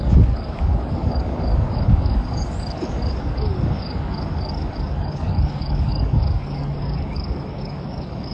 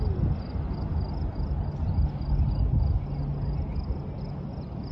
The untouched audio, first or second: second